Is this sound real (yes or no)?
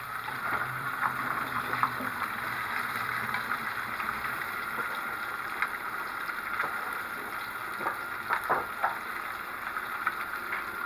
no